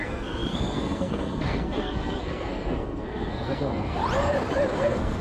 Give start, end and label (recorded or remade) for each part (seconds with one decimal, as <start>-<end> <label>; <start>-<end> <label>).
0.0-4.0 remade; 4.0-4.7 recorded; 4.7-5.2 remade